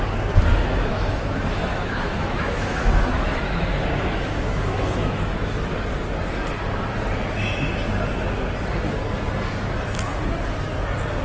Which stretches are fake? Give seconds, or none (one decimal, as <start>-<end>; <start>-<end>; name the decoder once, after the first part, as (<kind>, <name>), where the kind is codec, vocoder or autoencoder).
0.9-5.5 (autoencoder, DAC-VAE)